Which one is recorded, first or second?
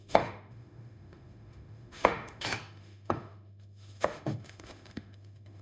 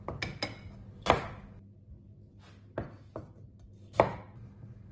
second